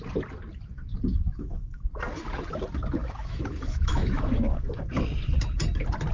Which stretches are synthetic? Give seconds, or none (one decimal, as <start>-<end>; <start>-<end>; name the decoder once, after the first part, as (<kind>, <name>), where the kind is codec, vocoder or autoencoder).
1.1-1.8 (autoencoder, DAC-VAE); 3.0-4.9